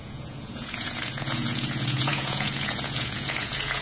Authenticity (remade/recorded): remade